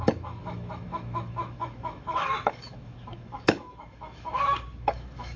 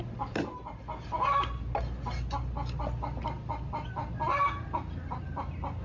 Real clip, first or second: second